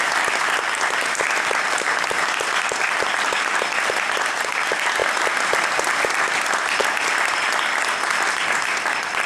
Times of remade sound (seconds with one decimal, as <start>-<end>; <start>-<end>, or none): 0.0-5.0; 6.1-6.8; 8.3-9.3